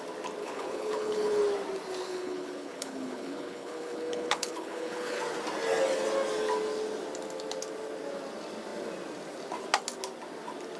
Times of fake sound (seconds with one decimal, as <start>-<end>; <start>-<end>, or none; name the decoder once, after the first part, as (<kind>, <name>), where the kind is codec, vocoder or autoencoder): 0.4-1.4 (codec, HILCodec); 2.0-5.2